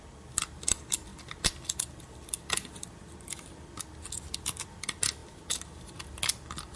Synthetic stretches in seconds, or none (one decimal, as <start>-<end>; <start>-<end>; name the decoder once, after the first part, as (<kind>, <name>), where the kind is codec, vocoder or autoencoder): none